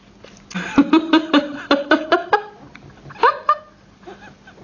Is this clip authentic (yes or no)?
yes